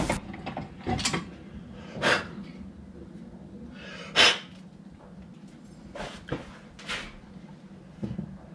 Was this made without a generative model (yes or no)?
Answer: yes